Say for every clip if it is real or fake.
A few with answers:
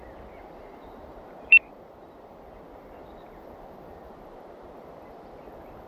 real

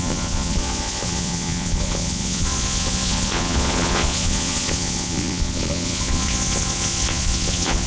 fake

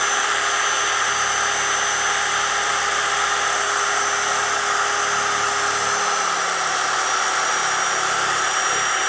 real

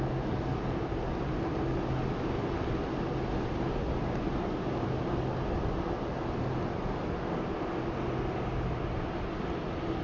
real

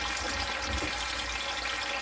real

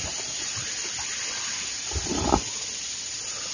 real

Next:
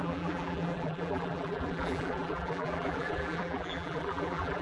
fake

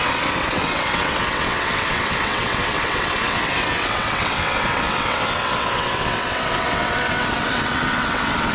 fake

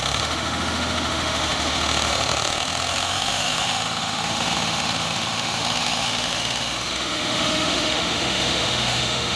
fake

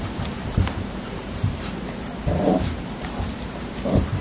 fake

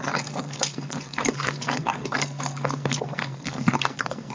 fake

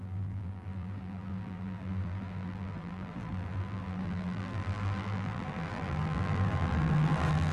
fake